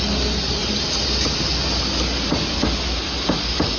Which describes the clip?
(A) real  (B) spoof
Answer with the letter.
A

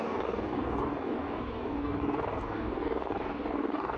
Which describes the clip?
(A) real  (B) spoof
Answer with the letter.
B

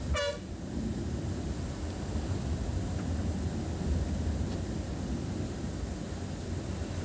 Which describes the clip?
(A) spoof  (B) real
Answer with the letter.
B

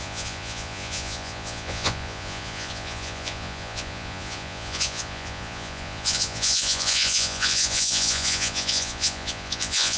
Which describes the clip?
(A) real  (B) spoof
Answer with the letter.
B